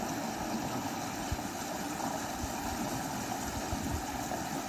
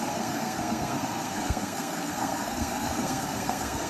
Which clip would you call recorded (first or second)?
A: first